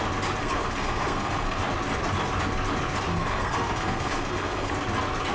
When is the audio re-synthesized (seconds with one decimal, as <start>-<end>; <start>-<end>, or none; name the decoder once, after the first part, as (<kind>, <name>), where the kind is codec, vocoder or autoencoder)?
0.4-1.6 (codec, SNAC); 3.1-4.7